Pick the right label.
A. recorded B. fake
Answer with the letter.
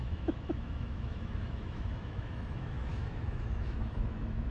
B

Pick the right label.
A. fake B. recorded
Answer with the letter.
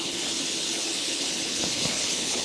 A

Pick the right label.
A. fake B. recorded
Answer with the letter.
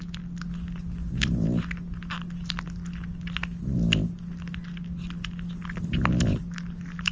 B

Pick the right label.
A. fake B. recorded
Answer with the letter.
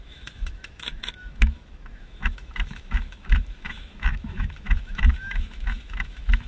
A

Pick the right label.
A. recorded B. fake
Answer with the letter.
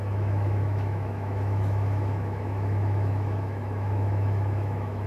B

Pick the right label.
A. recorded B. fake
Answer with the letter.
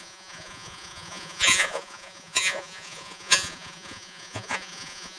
B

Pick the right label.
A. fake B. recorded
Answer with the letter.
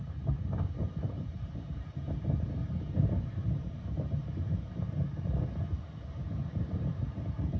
A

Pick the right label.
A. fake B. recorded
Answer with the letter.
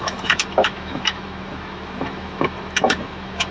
A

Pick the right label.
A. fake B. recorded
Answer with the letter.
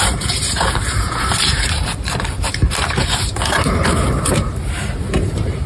A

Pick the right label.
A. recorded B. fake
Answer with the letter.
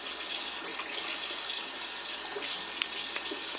A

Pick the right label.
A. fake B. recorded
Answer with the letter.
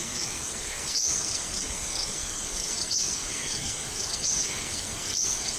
A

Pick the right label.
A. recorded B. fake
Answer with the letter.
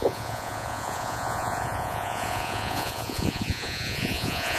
B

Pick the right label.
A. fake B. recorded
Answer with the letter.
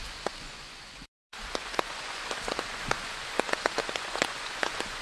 A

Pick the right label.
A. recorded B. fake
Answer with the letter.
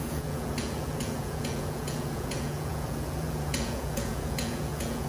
B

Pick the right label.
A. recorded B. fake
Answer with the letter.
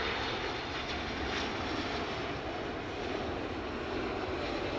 A